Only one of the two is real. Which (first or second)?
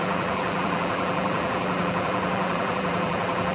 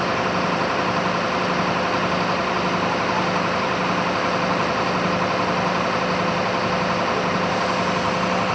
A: second